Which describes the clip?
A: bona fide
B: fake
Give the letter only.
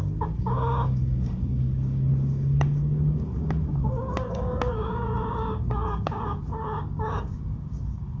B